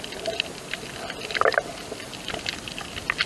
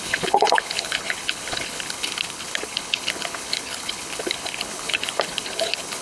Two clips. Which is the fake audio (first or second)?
second